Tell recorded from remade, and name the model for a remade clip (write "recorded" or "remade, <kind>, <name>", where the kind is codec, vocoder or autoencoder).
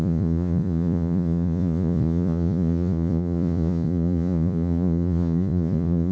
remade, vocoder, Vocos